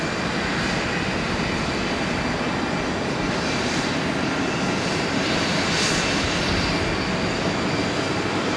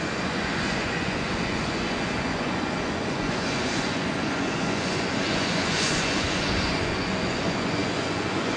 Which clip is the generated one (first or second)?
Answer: second